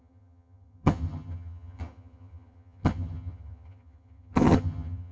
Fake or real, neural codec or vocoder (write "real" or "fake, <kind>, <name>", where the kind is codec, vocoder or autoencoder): fake, vocoder, HiFi-GAN